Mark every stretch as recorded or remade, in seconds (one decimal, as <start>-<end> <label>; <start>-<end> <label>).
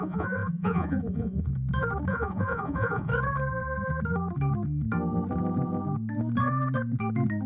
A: 0.0-1.5 remade; 1.5-2.1 recorded; 2.1-3.1 remade; 3.1-7.5 recorded